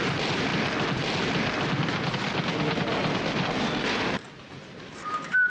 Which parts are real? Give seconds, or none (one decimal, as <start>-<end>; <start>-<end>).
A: 0.0-5.5

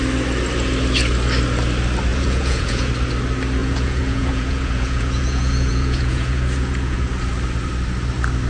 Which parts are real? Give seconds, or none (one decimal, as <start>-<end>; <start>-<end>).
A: 0.0-2.1; 2.9-3.6; 7.1-8.5

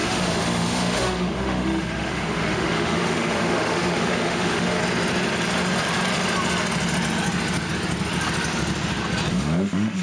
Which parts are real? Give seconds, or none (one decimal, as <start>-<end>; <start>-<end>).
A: 4.8-9.3

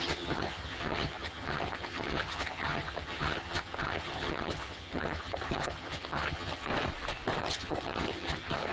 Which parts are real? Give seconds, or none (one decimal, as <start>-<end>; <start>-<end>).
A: 6.7-7.4

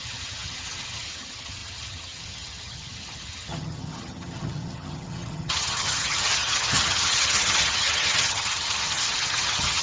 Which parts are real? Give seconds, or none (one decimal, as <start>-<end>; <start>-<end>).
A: none

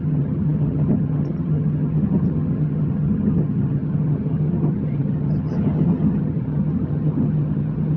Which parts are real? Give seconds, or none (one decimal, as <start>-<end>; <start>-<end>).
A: none